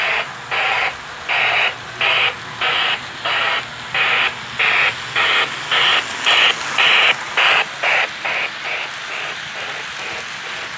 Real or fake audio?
real